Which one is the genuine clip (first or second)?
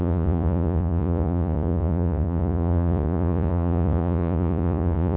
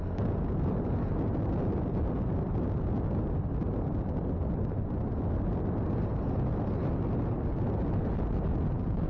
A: second